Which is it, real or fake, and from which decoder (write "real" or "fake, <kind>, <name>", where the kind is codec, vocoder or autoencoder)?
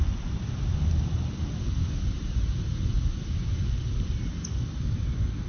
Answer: real